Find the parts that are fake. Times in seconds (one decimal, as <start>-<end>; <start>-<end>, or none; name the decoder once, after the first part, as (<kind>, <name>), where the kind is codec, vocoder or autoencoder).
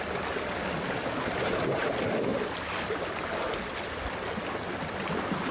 none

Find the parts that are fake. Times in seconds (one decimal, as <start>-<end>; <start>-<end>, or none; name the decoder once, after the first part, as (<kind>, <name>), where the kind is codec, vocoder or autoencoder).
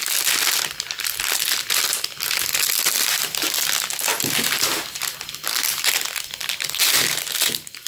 none